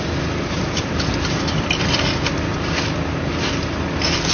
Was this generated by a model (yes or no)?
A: no